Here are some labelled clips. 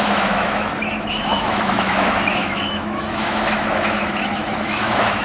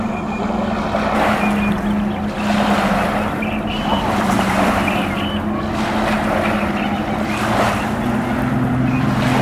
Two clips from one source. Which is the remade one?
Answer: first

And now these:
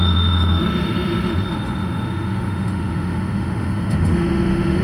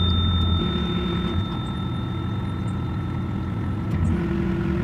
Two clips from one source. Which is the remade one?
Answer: first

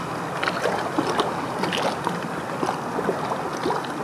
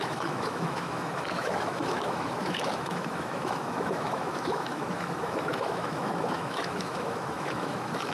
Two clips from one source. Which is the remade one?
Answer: second